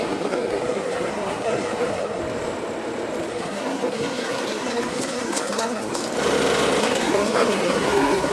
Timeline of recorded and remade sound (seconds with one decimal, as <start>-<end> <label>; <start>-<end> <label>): 0.0-2.2 remade; 2.2-3.3 recorded; 3.3-6.0 remade; 6.0-6.8 recorded; 6.8-8.3 remade